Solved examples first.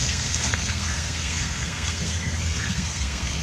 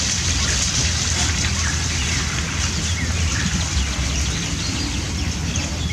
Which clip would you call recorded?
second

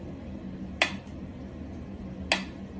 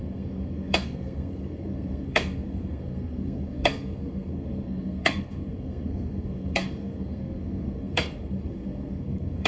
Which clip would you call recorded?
first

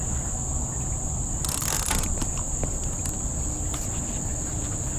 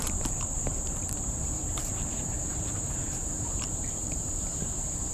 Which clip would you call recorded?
first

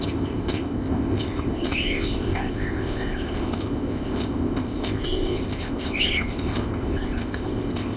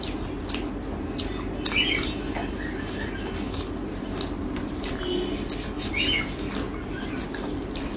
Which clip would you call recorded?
second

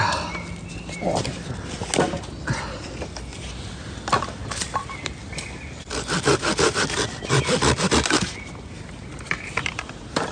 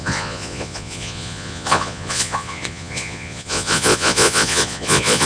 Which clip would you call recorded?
first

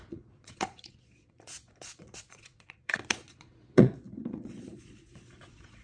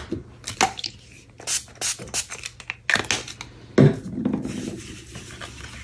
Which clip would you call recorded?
second